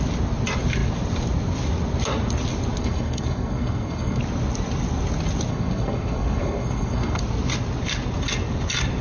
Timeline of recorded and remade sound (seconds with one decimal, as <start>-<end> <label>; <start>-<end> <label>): 0.0-2.8 recorded; 2.8-4.2 remade; 4.2-5.5 recorded; 5.5-7.2 remade; 7.2-9.0 recorded

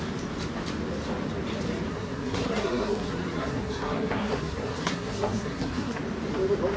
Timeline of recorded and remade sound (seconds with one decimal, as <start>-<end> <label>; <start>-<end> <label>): 0.0-1.9 recorded; 1.9-6.0 remade; 6.0-6.8 recorded

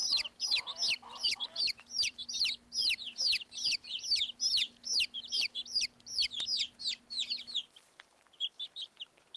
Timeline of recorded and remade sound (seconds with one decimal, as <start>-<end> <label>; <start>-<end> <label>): 0.0-9.4 remade